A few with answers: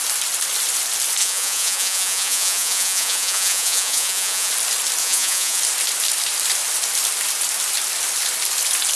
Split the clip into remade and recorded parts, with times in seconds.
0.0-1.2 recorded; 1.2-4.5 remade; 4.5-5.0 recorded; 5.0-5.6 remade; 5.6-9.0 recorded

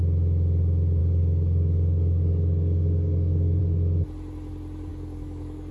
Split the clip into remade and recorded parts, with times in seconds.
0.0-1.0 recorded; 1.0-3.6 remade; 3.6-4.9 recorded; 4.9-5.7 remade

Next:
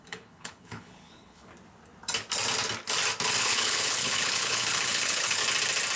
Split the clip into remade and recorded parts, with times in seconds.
0.0-1.5 remade; 1.5-3.4 recorded; 3.4-5.4 remade; 5.4-6.0 recorded

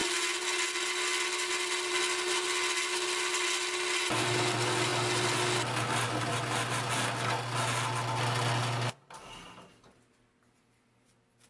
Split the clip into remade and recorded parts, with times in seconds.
0.0-11.5 recorded

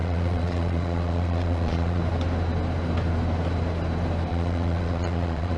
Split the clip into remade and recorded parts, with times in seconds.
0.0-2.0 remade; 2.0-4.3 recorded; 4.3-5.6 remade